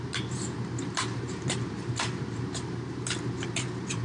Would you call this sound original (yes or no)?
no